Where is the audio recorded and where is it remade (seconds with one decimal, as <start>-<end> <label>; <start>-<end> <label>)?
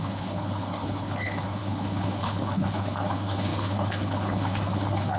0.0-5.2 remade